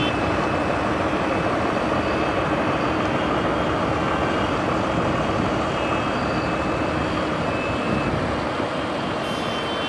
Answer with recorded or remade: recorded